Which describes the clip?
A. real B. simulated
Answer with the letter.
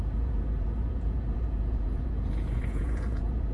B